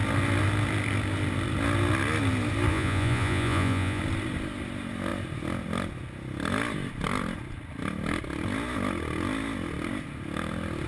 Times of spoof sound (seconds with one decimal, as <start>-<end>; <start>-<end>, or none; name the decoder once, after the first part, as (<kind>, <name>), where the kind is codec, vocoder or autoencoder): 2.7-4.0 (vocoder, Vocos)

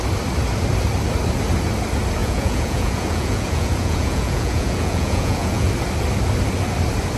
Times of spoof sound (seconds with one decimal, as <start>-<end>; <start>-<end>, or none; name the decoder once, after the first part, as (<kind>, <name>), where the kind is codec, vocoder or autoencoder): 2.2-5.7 (vocoder, Vocos)

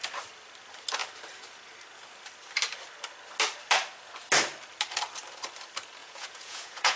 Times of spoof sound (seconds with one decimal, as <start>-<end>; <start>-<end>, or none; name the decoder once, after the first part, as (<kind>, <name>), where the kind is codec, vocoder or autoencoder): 6.0-7.0 (vocoder, Vocos)

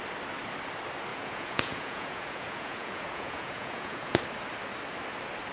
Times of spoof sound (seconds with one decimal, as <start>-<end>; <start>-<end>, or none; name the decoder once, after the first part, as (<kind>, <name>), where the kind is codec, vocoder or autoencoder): 1.1-4.2 (vocoder, Vocos)